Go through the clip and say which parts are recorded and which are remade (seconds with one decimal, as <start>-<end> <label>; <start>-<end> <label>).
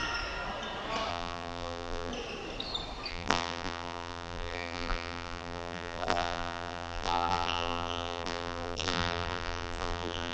0.0-1.1 recorded; 1.1-2.1 remade; 2.1-3.1 recorded; 3.1-10.3 remade